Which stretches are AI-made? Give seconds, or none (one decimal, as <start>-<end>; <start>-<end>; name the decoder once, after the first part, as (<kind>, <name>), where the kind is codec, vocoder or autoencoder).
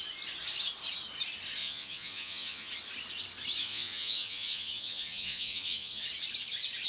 1.6-2.7 (vocoder, Vocos); 3.6-6.0